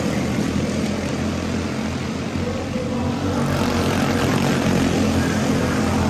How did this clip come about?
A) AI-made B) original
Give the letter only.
B